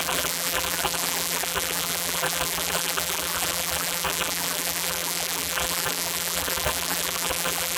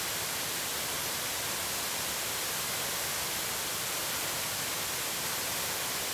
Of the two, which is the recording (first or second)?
second